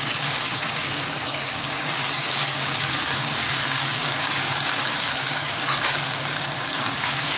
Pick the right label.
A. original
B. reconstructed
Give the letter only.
B